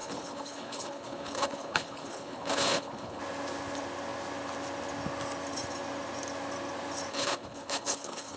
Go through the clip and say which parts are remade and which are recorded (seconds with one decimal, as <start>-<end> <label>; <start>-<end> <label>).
0.0-3.2 remade; 3.2-7.1 recorded; 7.1-8.4 remade